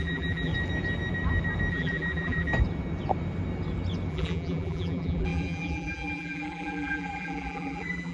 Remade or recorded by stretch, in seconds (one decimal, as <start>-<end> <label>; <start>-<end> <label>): 0.0-0.5 remade; 0.5-1.7 recorded; 1.7-2.5 remade; 2.5-4.1 recorded; 4.1-8.1 remade